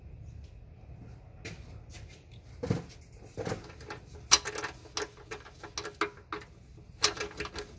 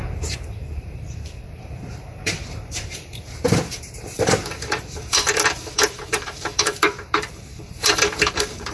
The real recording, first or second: first